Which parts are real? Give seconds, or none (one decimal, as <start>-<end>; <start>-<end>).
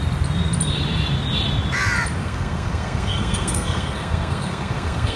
0.0-2.2